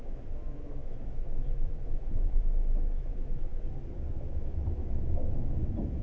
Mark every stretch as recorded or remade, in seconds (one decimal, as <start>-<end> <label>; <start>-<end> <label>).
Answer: 0.0-3.5 remade; 3.5-4.1 recorded; 4.1-6.0 remade